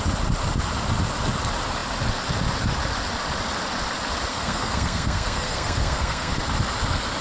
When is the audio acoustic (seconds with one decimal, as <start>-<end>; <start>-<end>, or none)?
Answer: 0.0-4.3; 6.3-7.2